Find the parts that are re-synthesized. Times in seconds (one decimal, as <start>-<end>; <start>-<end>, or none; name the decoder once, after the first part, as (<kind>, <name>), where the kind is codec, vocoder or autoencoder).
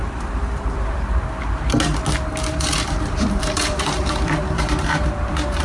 0.0-1.0 (vocoder, BigVGAN v2); 2.5-5.6